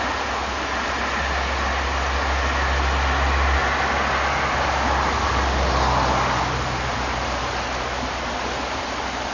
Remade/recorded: recorded